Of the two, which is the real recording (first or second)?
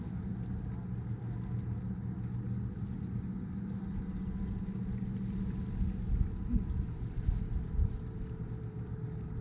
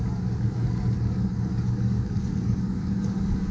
first